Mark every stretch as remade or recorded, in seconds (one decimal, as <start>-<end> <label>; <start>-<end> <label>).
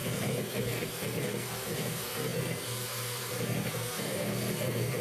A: 0.0-5.0 remade